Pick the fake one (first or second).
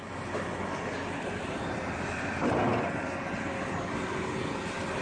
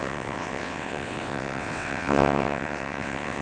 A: second